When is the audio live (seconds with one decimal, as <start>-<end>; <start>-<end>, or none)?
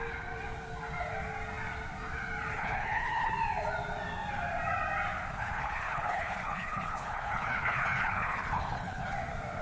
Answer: 0.0-2.5; 3.3-5.3; 9.1-9.6